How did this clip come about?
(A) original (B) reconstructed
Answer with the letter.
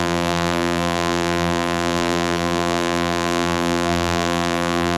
B